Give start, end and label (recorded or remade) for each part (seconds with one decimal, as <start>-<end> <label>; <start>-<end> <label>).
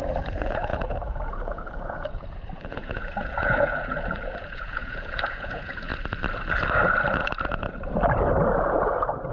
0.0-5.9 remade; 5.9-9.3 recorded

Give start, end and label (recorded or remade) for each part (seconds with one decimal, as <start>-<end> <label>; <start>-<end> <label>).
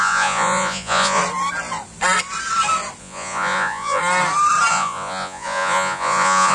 0.0-1.2 remade; 1.2-3.0 recorded; 3.0-4.0 remade; 4.0-4.7 recorded; 4.7-6.5 remade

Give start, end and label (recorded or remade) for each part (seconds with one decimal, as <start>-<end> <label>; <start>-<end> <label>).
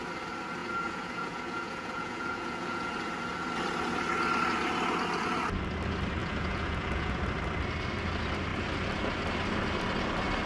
0.0-0.6 recorded; 0.6-2.9 remade; 2.9-6.2 recorded; 6.2-7.2 remade; 7.2-10.5 recorded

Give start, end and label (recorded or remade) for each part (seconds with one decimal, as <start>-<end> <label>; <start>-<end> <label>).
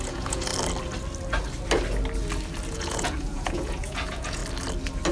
0.0-0.5 remade; 0.5-2.7 recorded; 2.7-4.4 remade; 4.4-5.1 recorded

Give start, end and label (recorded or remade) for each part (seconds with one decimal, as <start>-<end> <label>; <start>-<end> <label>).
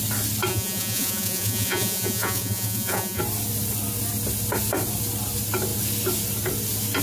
0.0-0.5 recorded; 0.5-3.2 remade; 3.2-7.0 recorded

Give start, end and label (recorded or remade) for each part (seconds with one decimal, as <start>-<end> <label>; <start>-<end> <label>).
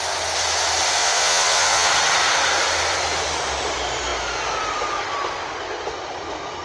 0.0-1.0 recorded; 1.0-1.9 remade; 1.9-6.6 recorded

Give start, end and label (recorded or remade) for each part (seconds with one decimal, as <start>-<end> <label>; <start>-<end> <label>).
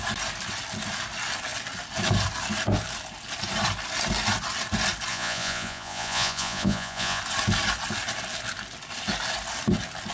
0.0-5.1 recorded; 5.1-7.2 remade; 7.2-10.1 recorded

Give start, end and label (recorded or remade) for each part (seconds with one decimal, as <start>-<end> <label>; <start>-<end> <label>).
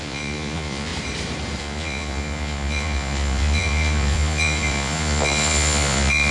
0.0-0.9 remade; 0.9-1.6 recorded; 1.6-6.3 remade